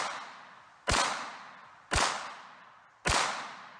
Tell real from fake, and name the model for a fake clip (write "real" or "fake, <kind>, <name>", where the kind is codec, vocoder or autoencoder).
real